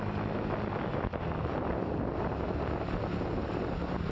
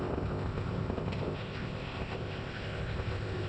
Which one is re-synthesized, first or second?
second